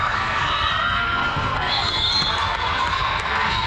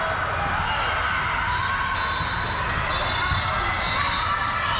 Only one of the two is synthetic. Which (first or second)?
first